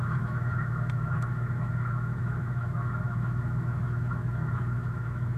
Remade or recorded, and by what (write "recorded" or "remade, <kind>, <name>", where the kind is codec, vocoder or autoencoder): remade, autoencoder, DAC-VAE